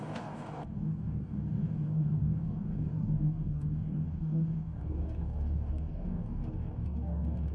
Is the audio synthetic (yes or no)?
yes